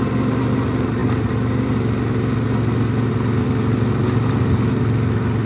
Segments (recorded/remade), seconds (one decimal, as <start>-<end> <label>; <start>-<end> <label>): 0.0-5.5 recorded